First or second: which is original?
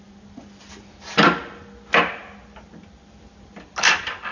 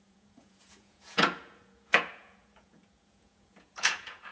first